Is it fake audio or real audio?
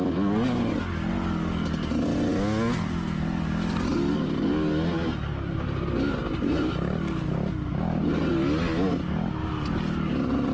real